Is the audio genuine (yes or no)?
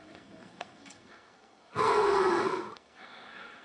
no